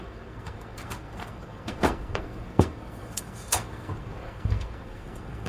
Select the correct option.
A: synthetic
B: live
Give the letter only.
A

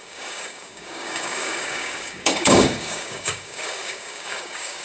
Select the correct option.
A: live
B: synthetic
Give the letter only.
B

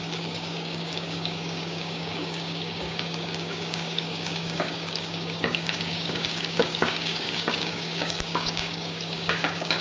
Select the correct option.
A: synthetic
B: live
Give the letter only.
A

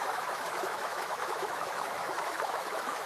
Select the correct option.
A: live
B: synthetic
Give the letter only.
B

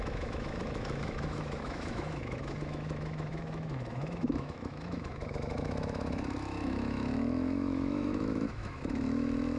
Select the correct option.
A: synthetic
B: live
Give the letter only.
A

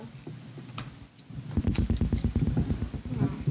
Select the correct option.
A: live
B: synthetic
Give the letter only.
A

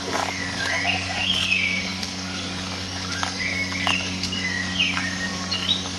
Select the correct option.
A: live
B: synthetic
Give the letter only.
B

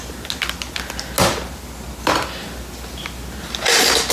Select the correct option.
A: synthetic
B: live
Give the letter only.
B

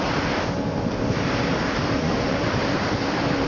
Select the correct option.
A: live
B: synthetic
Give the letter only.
B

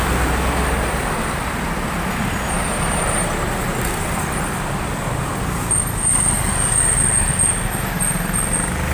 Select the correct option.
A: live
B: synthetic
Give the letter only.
A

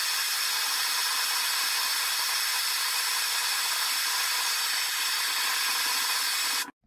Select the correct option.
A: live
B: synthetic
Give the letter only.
A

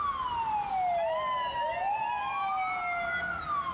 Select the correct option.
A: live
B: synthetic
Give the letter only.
A